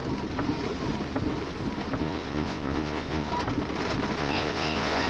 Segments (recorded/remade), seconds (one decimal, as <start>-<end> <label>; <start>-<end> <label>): 0.0-2.0 recorded; 2.0-3.3 remade; 3.3-4.2 recorded; 4.2-5.1 remade